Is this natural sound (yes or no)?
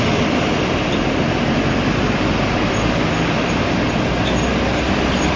yes